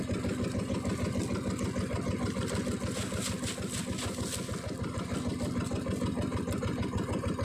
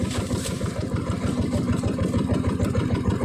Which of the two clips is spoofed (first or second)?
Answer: second